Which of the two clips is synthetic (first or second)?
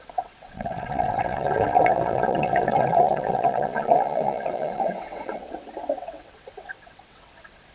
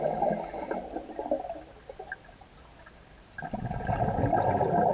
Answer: first